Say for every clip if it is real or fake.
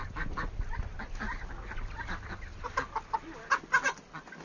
real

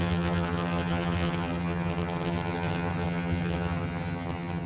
fake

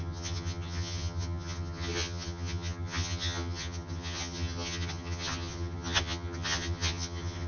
fake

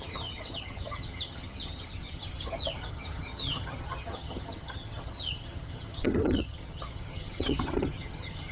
fake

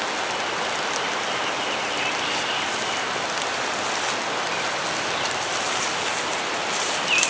real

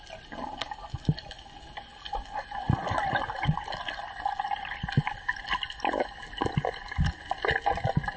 real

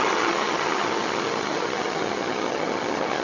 fake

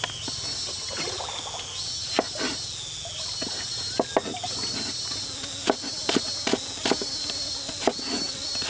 real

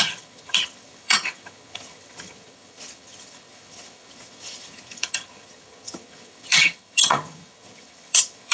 fake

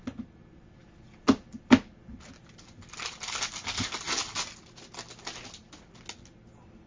real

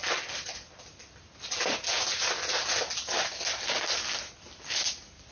real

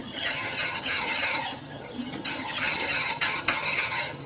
fake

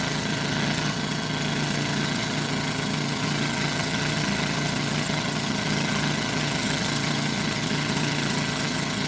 fake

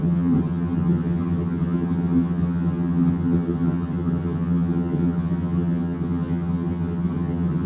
fake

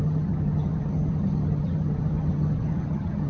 fake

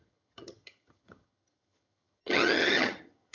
fake